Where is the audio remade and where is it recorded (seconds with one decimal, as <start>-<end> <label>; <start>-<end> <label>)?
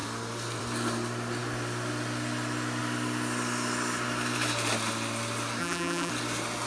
0.0-5.6 recorded; 5.6-6.1 remade; 6.1-6.7 recorded